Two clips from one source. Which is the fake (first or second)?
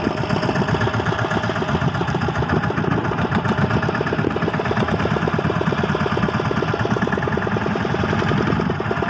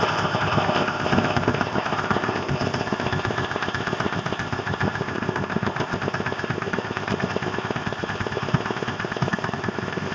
second